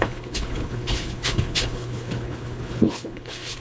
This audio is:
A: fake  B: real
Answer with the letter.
A